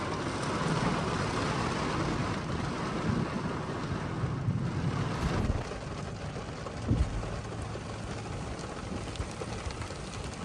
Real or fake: real